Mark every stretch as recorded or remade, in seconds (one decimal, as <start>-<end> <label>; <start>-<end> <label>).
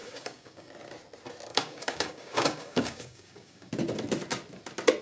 0.0-0.7 remade; 0.7-1.5 recorded; 1.5-3.7 remade; 3.7-5.0 recorded